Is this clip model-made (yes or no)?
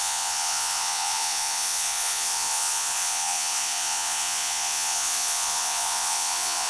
yes